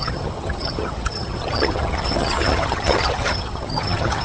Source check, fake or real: fake